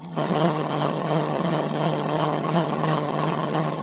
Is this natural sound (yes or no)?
no